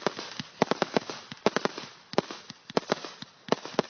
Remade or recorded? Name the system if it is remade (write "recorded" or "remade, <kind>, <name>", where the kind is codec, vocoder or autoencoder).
recorded